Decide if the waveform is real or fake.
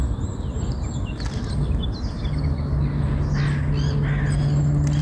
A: real